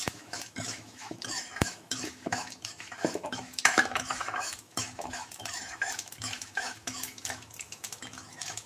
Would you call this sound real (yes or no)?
no